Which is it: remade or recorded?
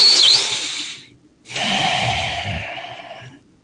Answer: recorded